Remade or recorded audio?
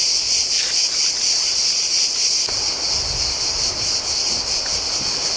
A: recorded